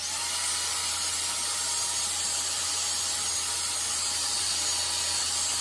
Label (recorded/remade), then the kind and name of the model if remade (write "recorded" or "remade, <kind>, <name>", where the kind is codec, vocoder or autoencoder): recorded